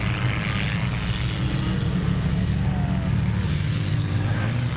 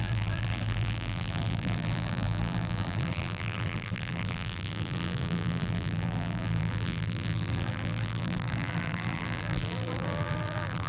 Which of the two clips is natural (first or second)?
first